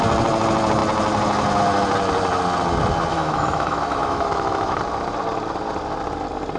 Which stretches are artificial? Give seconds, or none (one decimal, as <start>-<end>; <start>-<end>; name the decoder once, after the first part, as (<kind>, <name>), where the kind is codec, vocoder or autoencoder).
3.1-4.8 (autoencoder, DAC-VAE)